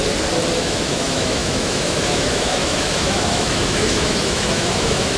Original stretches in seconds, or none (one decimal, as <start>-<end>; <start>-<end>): 0.0-0.6